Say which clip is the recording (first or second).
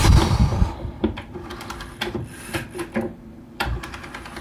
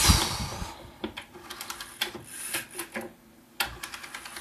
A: second